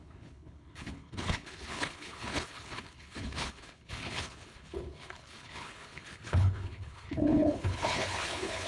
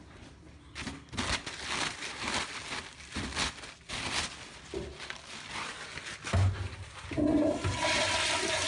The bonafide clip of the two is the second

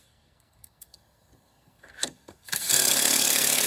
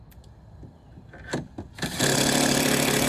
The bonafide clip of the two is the second